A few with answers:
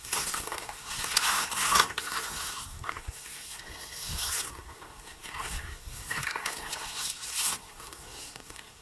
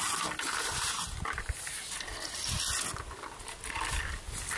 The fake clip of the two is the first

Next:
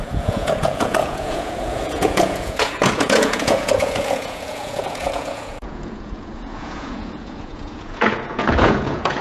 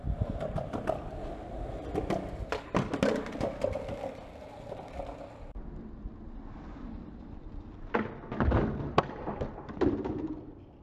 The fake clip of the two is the first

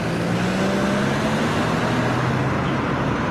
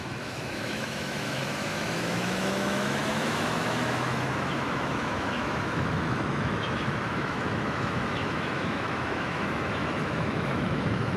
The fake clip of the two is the second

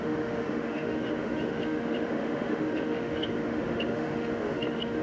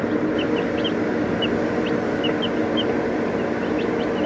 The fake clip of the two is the first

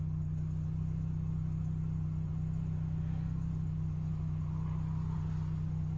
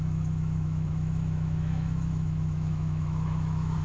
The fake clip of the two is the second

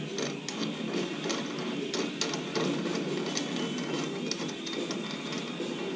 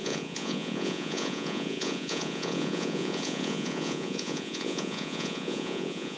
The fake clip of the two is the second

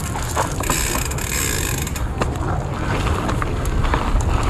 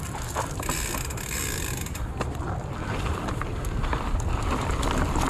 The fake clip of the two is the second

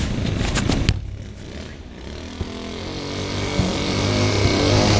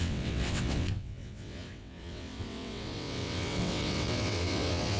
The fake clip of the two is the second